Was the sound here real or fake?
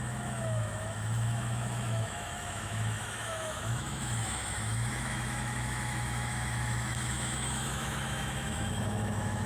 fake